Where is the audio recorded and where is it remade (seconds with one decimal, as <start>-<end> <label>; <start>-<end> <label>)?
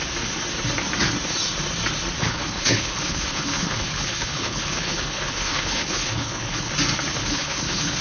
0.0-2.2 recorded; 2.2-6.7 remade; 6.7-7.2 recorded; 7.2-8.0 remade